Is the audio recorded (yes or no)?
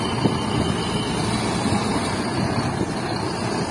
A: yes